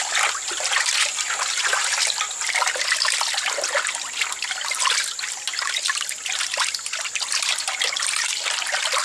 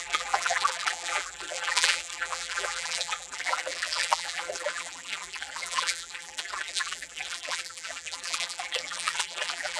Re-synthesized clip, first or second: second